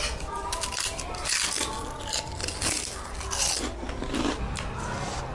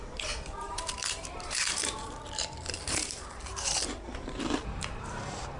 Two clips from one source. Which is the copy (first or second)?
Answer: second